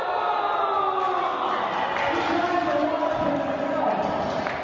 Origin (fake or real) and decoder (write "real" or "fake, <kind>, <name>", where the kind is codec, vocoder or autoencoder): real